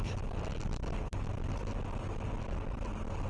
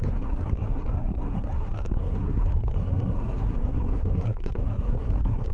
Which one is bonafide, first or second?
first